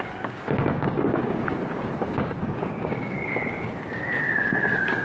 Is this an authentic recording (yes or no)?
no